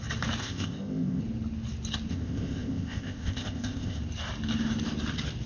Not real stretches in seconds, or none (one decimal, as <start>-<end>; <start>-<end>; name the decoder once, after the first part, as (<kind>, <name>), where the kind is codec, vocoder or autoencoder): 0.4-1.2 (codec, ZipCodec); 2.1-4.0